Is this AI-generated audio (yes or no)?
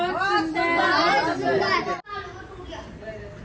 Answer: no